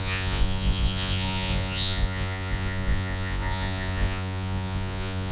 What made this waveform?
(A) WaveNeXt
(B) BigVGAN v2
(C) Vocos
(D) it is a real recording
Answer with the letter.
C